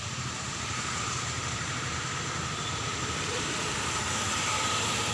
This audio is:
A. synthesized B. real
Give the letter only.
A